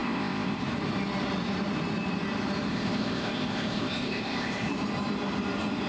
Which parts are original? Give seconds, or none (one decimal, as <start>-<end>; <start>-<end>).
0.6-2.7; 4.7-5.9